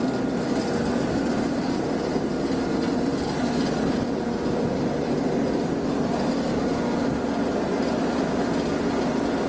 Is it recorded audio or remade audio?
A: recorded